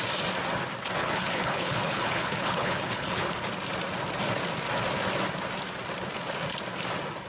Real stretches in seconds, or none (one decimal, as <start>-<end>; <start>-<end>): 0.0-1.0; 3.3-7.3